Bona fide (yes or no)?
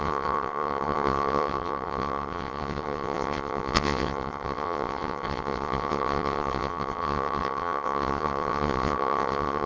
no